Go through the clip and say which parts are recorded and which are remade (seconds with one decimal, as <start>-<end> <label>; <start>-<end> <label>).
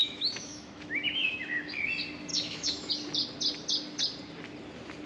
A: 0.0-1.8 remade; 1.8-2.3 recorded; 2.3-2.9 remade; 2.9-5.1 recorded